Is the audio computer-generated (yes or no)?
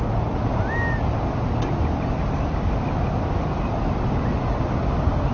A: no